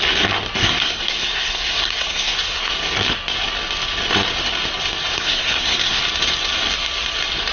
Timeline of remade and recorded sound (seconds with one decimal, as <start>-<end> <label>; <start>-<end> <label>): 0.0-0.6 recorded; 0.6-2.7 remade; 2.7-5.1 recorded; 5.1-6.0 remade; 6.0-7.5 recorded